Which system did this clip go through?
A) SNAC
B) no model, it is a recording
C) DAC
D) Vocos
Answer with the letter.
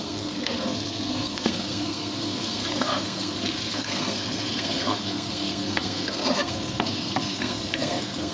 A